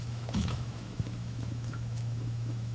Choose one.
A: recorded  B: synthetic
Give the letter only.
B